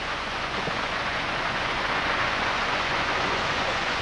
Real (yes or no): no